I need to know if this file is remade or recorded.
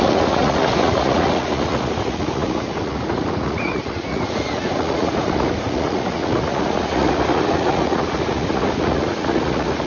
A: remade